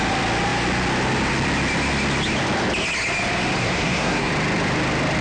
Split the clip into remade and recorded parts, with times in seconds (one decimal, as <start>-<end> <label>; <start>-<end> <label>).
0.0-3.6 recorded; 3.6-4.3 remade; 4.3-5.2 recorded